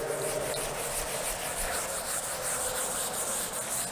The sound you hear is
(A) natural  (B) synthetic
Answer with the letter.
A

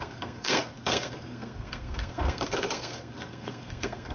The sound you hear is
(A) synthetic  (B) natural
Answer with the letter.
A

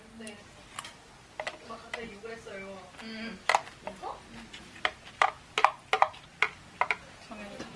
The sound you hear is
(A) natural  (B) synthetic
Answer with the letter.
A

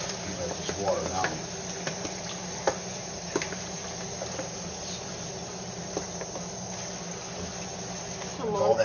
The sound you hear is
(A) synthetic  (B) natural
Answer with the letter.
B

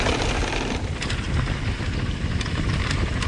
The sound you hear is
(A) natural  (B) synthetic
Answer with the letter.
A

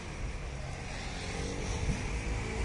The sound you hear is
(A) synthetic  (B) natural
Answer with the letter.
B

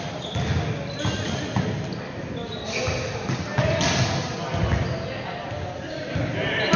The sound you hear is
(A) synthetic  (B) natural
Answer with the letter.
B